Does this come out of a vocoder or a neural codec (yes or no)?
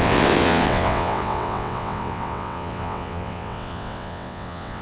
yes